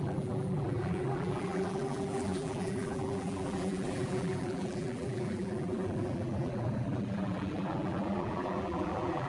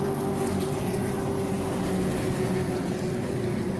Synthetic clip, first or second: first